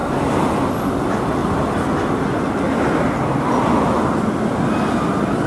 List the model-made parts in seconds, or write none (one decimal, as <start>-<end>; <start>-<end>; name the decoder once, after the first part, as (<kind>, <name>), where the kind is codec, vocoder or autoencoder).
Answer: none